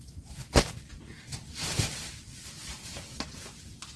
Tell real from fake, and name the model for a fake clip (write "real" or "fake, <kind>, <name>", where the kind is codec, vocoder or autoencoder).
fake, vocoder, BigVGAN v2